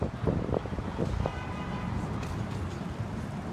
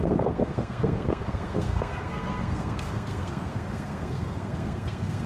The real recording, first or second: first